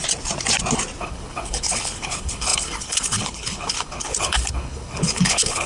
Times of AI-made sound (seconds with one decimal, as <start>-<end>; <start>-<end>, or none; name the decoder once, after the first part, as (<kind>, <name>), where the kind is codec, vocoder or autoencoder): 1.0-5.7 (codec, HILCodec)

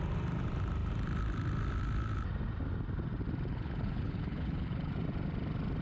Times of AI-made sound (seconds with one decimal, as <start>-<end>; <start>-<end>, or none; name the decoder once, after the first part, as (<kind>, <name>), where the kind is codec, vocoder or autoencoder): 3.5-4.9 (codec, HILCodec)

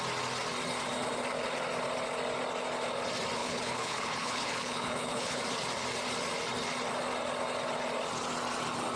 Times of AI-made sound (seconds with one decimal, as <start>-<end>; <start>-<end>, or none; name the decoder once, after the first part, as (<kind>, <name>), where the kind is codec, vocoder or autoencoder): 3.4-5.4 (codec, HILCodec)

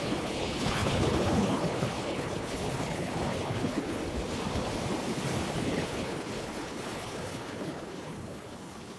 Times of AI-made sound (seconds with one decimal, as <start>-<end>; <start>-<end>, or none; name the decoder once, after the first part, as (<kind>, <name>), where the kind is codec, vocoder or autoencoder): 0.0-4.0 (codec, HILCodec); 5.5-9.0